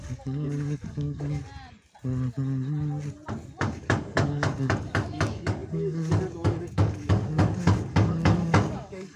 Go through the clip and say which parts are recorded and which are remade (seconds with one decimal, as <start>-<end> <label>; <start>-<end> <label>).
0.0-1.4 remade; 1.4-3.6 recorded; 3.6-9.2 remade